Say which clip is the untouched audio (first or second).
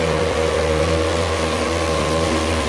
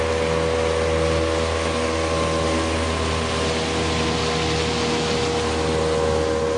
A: second